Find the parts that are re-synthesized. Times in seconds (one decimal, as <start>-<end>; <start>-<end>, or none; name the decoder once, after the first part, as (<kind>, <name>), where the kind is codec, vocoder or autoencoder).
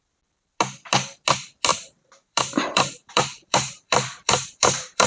1.7-5.1 (vocoder, BigVGAN v2)